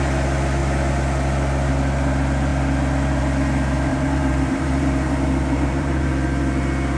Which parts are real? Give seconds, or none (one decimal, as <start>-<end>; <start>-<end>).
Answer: 0.0-3.9; 6.1-7.0